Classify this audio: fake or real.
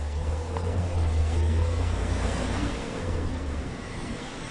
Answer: fake